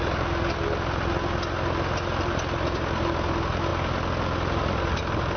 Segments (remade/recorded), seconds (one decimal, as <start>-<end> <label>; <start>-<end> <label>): 0.0-5.4 recorded